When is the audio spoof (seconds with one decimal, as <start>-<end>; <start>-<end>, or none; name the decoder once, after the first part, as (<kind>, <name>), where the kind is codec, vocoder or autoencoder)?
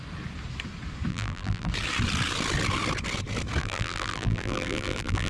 1.1-1.7 (vocoder, BigVGAN v2); 3.6-5.3